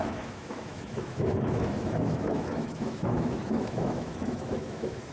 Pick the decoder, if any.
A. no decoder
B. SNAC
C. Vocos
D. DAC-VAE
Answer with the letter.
D